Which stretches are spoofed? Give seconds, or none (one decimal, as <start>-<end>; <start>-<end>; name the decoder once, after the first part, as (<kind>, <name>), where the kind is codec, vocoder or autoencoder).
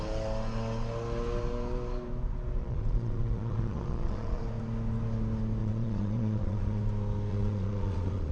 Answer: 2.6-4.4 (vocoder, Vocos); 5.6-6.8; 7.3-8.3